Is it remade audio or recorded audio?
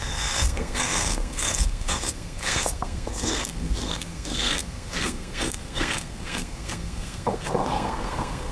remade